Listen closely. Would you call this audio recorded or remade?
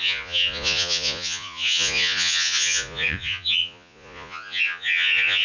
remade